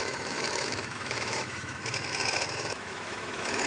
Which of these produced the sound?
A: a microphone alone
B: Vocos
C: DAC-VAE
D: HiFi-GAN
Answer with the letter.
C